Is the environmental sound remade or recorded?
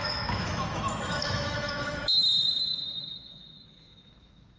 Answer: remade